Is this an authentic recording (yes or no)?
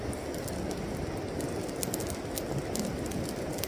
yes